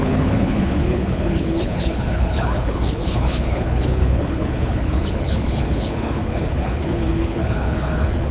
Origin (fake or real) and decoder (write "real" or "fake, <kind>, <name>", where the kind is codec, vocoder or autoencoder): fake, codec, HILCodec